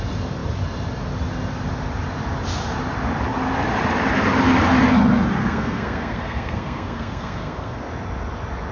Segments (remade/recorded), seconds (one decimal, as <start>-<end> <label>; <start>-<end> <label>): 0.0-5.4 recorded; 5.4-7.8 remade; 7.8-8.7 recorded